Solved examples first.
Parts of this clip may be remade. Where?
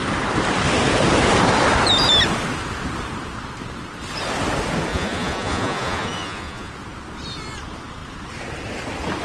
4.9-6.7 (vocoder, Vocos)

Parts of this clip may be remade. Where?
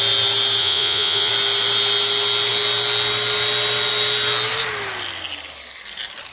0.6-1.3 (vocoder, Vocos)